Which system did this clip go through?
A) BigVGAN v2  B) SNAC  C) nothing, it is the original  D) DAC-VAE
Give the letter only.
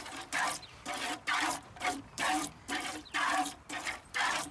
A